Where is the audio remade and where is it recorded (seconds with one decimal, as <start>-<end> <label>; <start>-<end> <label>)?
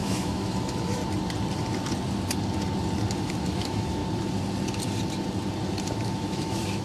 0.0-1.0 remade; 1.0-3.2 recorded; 3.2-4.0 remade; 4.0-5.9 recorded; 5.9-6.8 remade